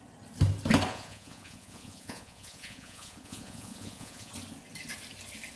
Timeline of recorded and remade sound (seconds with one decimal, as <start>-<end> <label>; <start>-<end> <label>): 0.0-0.9 recorded; 0.9-4.3 remade; 4.3-5.6 recorded